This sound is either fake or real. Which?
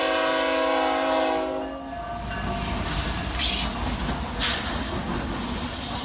real